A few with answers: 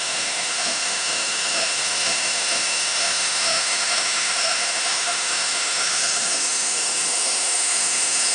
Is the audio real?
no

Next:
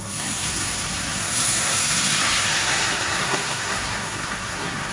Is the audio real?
no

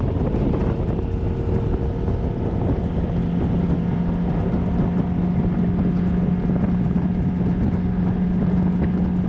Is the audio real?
yes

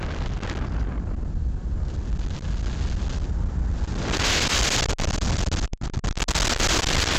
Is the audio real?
yes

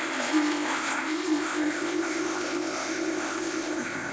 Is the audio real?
no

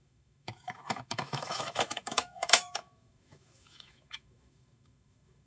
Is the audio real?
no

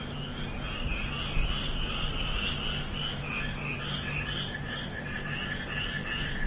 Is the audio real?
yes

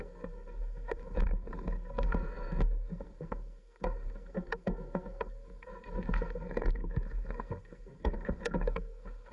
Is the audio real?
no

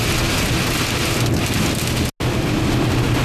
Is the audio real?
yes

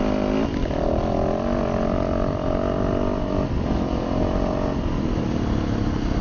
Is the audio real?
yes